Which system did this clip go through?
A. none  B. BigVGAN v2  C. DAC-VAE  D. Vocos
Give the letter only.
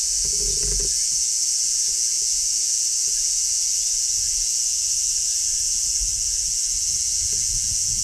D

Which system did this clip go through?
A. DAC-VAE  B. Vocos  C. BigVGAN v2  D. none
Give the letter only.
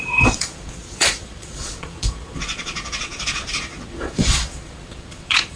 B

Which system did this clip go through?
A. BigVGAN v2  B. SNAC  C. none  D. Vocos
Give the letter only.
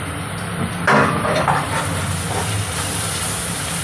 C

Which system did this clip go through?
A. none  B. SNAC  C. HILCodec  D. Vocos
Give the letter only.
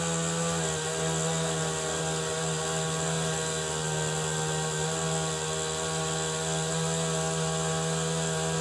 A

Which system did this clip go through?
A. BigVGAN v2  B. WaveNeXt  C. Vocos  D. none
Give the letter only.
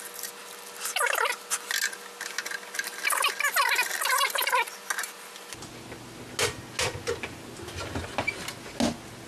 D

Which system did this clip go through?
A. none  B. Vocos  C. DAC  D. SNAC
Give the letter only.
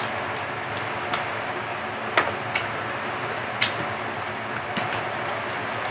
A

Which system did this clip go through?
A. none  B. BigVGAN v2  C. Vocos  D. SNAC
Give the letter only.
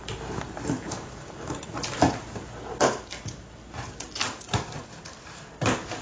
A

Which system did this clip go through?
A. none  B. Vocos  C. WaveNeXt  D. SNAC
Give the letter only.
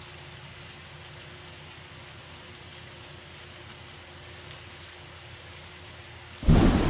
A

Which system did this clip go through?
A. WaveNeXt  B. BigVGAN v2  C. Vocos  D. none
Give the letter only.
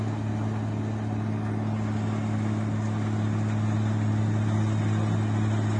D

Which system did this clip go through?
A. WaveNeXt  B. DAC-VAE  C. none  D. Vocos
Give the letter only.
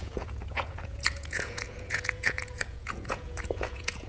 D